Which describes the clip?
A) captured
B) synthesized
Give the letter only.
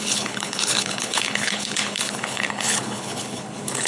B